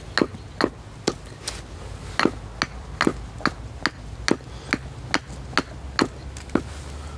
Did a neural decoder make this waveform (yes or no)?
no